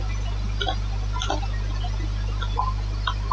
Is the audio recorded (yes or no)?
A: yes